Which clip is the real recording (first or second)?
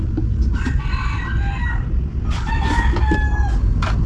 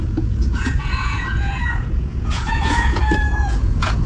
first